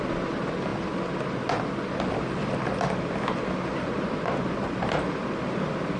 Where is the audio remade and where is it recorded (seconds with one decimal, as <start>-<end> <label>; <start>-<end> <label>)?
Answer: 0.0-6.0 recorded